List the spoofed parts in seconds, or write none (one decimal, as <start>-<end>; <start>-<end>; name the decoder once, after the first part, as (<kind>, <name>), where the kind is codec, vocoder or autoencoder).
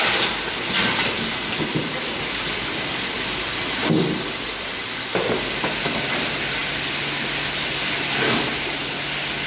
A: none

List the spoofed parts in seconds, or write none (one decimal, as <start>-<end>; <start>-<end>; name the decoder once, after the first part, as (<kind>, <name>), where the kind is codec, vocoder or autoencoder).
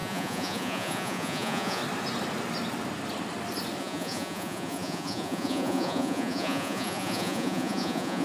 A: 0.0-1.8 (vocoder, Vocos); 3.8-8.2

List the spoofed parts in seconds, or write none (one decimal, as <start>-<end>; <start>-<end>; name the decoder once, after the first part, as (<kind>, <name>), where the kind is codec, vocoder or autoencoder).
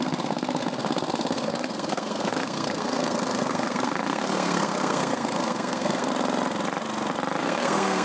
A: 0.0-6.1 (codec, SNAC); 7.4-8.0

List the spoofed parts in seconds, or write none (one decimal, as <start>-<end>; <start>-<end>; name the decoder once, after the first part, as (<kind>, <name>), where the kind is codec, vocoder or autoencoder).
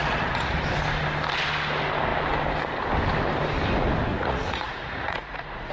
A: 0.0-0.6 (vocoder, Vocos); 4.1-5.7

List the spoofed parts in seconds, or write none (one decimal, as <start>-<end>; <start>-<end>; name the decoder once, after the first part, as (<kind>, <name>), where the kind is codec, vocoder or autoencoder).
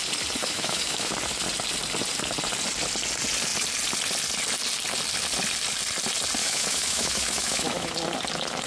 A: 0.4-1.1 (autoencoder, DAC-VAE); 6.4-7.9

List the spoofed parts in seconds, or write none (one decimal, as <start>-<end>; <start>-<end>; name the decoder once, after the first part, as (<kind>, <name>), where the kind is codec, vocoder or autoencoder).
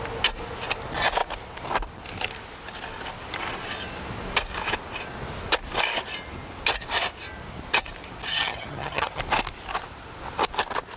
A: 8.3-9.2 (vocoder, HiFi-GAN)